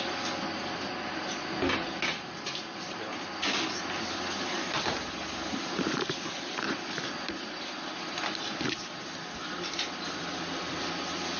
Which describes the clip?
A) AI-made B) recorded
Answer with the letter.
B